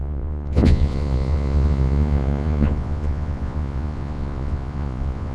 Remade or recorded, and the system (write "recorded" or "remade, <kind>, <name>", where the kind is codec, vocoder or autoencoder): remade, vocoder, Vocos